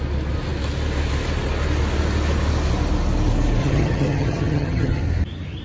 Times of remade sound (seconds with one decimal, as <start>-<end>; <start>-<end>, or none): 3.6-5.0